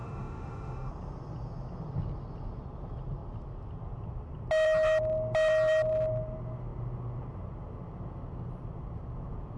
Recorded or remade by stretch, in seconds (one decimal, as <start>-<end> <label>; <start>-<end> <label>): 0.0-0.9 remade; 0.9-9.6 recorded